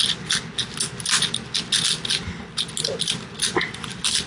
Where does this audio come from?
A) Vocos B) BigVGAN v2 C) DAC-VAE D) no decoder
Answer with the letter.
D